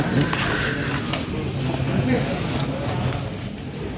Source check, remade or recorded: recorded